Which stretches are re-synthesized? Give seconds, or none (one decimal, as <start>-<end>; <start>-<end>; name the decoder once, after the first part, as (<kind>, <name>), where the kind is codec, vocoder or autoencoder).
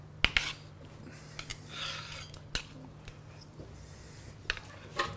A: none